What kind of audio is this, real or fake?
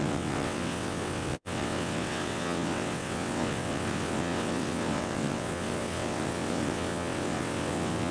fake